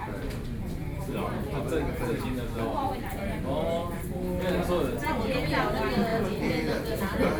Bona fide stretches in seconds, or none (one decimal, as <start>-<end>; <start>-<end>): 0.0-0.8; 3.1-6.1